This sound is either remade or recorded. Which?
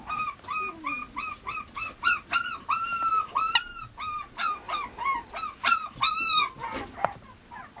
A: recorded